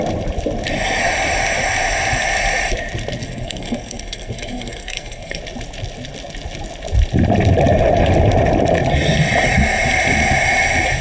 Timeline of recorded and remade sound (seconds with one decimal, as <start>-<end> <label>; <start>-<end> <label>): 0.0-3.2 recorded; 3.2-5.4 remade; 5.4-11.0 recorded